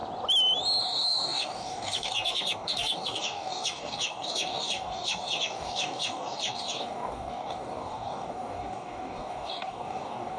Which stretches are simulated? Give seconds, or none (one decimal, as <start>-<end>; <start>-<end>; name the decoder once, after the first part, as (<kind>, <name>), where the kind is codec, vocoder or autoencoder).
0.8-10.4 (codec, DAC)